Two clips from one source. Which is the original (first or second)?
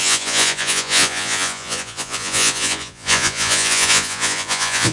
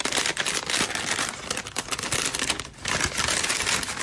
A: second